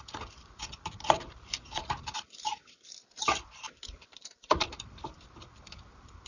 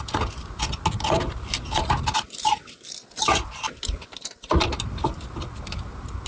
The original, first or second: second